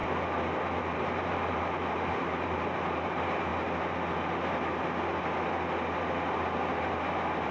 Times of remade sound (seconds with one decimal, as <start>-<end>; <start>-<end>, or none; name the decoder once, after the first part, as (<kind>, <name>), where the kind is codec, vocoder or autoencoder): 0.8-3.5 (vocoder, BigVGAN v2); 6.9-7.5